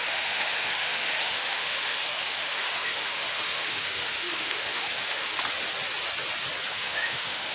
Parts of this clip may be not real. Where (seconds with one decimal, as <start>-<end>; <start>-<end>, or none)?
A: 0.0-5.3; 6.7-7.5